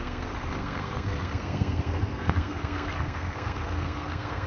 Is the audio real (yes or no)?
no